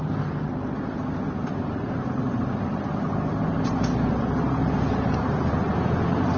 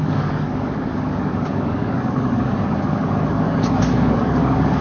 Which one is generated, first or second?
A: second